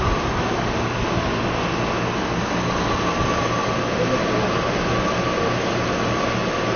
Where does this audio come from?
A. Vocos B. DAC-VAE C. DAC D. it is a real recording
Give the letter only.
D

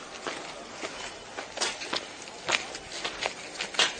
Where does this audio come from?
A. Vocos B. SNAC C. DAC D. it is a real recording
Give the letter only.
D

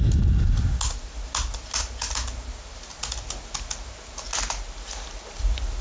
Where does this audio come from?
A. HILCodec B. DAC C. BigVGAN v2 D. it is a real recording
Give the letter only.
D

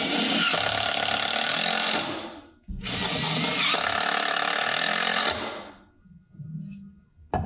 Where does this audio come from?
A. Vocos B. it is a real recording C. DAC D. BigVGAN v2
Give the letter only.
B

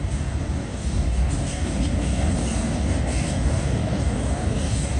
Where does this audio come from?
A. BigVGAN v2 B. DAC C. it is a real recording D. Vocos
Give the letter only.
B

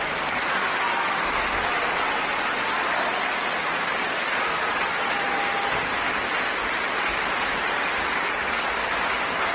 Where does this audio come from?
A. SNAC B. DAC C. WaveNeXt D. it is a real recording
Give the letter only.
D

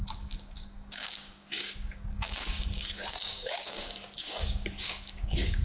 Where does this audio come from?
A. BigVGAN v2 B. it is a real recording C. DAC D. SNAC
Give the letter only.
C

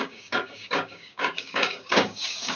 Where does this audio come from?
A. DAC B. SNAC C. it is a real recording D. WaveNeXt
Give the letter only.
A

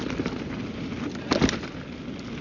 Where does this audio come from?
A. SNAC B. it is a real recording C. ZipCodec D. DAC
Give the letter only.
B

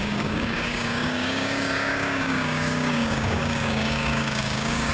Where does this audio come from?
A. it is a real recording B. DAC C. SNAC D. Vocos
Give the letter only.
B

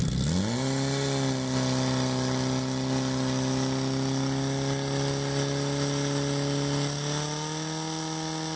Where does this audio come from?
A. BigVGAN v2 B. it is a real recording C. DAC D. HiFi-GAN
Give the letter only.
B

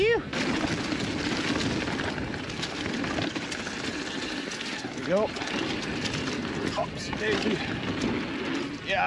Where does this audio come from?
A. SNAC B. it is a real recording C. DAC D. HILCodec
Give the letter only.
B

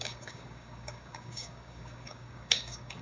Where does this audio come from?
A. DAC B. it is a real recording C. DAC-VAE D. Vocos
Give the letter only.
A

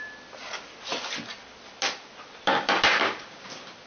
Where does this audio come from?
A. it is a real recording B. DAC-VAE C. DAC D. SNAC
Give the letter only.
A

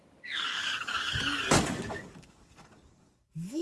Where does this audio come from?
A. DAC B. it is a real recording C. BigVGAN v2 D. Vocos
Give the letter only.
A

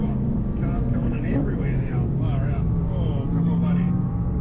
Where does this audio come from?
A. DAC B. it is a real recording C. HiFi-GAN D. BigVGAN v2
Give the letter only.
A